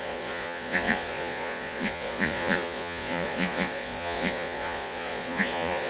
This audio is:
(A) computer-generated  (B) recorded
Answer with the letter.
A